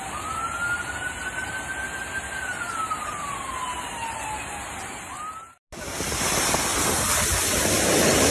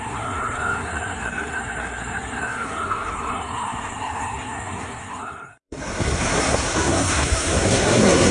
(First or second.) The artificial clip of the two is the second